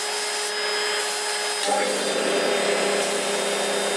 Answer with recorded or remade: recorded